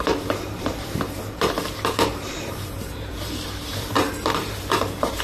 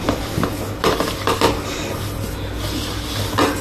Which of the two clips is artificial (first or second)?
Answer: first